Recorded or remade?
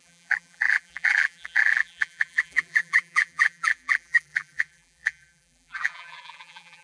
remade